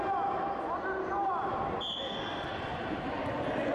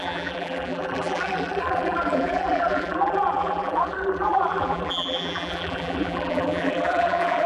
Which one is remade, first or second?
second